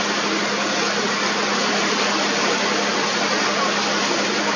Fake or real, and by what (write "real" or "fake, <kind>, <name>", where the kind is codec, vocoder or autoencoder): real